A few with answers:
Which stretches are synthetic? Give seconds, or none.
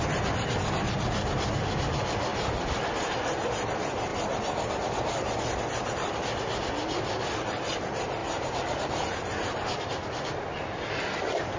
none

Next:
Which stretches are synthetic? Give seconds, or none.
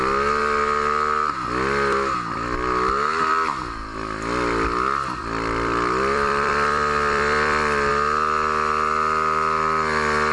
5.2-7.9 (vocoder, BigVGAN v2)